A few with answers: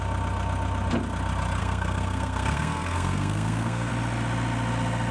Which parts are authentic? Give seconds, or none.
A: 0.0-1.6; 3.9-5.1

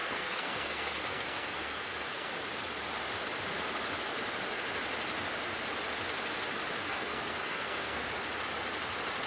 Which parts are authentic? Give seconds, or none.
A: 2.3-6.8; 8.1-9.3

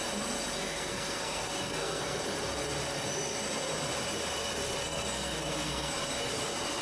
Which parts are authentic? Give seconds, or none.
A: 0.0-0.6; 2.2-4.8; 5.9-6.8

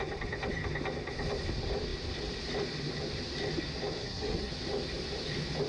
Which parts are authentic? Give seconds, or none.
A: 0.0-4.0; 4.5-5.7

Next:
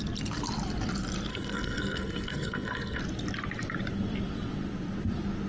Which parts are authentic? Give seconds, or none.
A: 0.0-1.3; 3.0-5.5

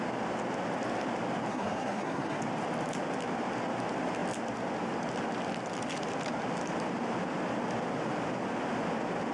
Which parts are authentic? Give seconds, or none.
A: 0.0-1.5; 2.4-9.3